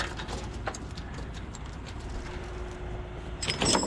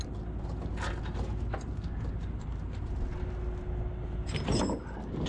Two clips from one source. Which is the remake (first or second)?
first